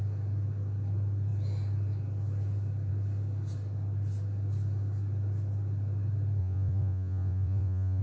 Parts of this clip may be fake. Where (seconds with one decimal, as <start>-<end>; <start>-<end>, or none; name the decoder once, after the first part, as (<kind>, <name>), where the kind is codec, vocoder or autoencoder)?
6.4-8.0 (vocoder, Vocos)